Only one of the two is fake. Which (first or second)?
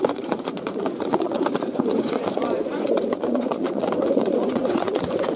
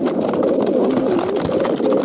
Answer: first